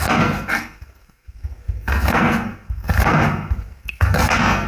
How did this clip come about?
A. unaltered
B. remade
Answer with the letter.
B